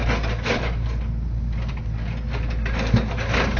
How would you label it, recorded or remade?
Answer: recorded